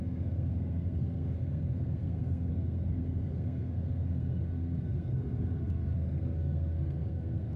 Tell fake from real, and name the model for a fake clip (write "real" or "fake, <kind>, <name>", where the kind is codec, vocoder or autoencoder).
fake, codec, SNAC